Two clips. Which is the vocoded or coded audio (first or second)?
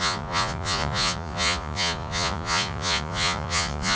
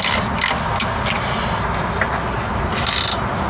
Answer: first